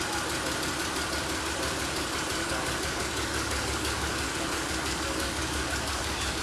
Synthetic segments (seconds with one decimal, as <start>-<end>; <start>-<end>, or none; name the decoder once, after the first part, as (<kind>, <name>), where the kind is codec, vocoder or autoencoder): 2.4-6.4 (codec, DAC)

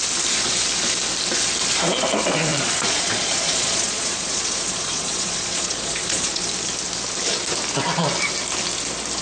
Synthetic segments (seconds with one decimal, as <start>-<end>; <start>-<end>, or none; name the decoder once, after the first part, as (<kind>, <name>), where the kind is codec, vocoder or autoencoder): 2.5-6.4 (vocoder, Vocos)

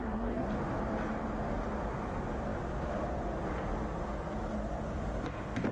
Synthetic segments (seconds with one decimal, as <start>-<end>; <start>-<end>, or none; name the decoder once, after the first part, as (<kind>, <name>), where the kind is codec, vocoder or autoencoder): 0.0-0.5 (codec, SNAC)

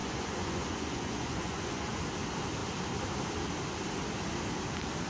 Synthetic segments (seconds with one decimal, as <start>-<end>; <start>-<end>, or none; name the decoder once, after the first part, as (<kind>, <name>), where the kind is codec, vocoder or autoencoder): 0.0-2.0 (vocoder, Vocos)

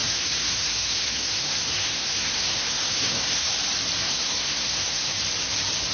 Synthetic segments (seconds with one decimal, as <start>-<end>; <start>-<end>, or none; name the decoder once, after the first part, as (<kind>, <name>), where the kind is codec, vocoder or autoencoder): 0.0-3.5 (codec, SNAC); 4.0-5.2

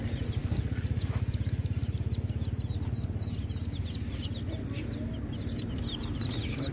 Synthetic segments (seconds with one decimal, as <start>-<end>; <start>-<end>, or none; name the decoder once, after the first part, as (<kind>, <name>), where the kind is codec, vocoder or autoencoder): none

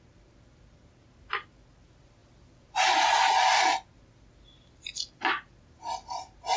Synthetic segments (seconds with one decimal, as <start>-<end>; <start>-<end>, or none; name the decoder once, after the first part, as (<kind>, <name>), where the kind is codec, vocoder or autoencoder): none

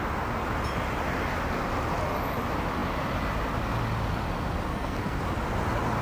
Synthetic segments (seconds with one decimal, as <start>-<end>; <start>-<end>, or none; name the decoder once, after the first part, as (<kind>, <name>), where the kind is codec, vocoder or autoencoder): 4.7-5.2 (codec, SNAC)